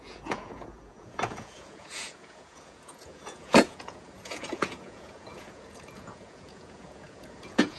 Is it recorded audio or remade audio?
remade